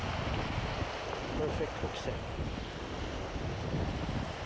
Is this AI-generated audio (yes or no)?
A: no